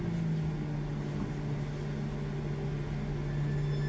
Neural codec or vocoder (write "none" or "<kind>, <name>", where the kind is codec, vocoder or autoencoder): none